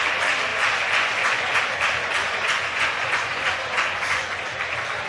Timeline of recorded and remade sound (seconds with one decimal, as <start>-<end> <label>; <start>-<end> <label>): 0.0-0.5 recorded; 0.5-1.6 remade; 1.6-2.2 recorded; 2.2-4.4 remade; 4.4-5.1 recorded